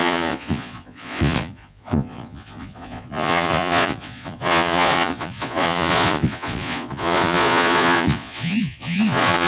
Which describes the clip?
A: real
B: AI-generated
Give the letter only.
B